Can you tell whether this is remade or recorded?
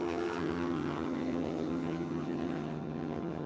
remade